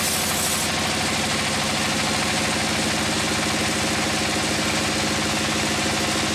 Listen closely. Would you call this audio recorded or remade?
recorded